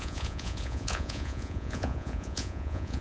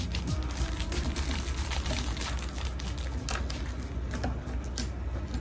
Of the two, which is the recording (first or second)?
second